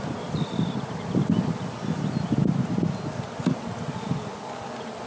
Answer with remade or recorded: recorded